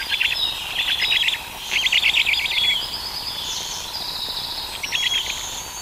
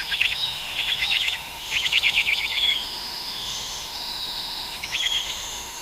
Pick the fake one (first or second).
second